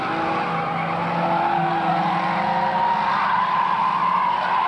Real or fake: real